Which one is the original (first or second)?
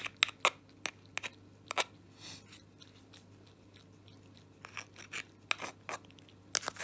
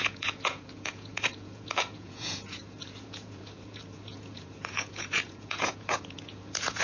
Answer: first